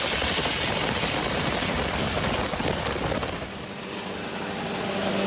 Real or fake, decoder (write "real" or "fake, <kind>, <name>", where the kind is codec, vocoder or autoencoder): real